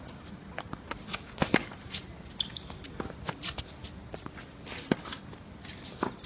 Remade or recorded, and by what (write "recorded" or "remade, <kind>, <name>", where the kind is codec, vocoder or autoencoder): recorded